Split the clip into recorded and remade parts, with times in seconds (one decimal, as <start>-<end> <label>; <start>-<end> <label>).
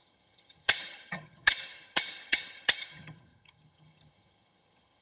0.0-5.0 remade